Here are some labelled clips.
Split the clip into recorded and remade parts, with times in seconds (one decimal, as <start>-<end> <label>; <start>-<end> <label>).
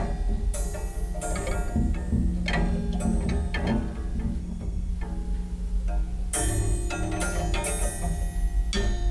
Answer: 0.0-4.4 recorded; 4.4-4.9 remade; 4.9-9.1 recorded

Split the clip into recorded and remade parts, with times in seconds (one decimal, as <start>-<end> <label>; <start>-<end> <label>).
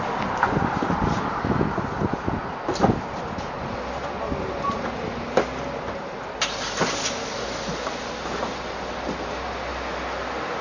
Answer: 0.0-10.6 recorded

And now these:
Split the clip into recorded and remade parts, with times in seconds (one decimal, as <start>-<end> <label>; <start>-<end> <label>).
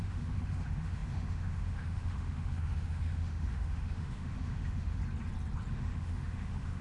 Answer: 0.0-5.0 remade; 5.0-5.7 recorded; 5.7-6.8 remade